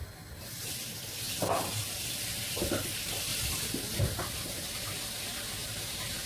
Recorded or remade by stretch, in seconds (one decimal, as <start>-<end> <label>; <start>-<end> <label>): 0.0-5.6 recorded; 5.6-6.3 remade